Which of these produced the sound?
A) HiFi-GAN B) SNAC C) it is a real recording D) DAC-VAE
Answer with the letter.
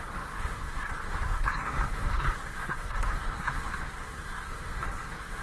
B